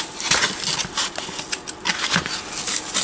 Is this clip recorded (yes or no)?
yes